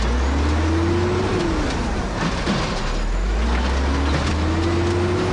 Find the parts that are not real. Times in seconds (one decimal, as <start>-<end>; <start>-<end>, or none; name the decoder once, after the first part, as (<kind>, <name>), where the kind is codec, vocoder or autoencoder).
none